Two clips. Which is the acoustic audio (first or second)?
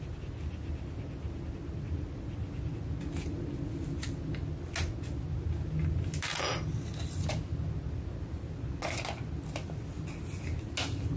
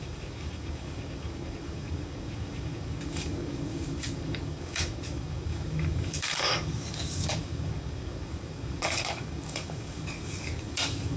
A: first